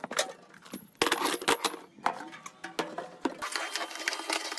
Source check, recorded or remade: recorded